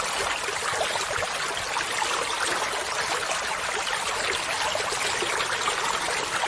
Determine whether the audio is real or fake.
real